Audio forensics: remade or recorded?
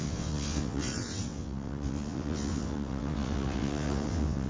remade